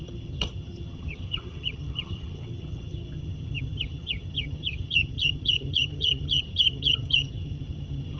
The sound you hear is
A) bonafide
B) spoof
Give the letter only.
B